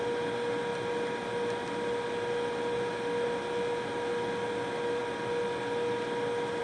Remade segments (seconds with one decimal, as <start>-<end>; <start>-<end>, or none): none